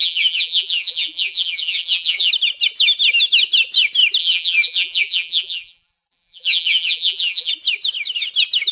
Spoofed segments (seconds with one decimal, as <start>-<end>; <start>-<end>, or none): 0.0-2.3; 4.2-7.5